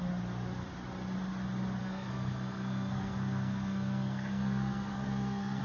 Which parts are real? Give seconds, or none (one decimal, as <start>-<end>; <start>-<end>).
0.0-1.8